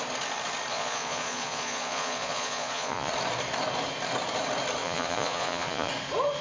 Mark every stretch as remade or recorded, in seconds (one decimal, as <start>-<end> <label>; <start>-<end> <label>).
0.0-0.7 recorded; 0.7-3.1 remade; 3.1-4.8 recorded; 4.8-5.9 remade; 5.9-6.4 recorded